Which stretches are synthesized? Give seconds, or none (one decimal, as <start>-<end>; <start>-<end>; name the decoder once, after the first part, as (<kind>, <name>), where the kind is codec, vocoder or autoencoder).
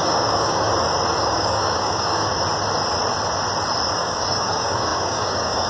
0.0-0.7 (codec, DAC); 1.2-2.3; 3.9-5.7